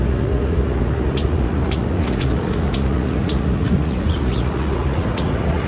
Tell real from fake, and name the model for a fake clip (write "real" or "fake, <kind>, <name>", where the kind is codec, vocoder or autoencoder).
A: fake, vocoder, Vocos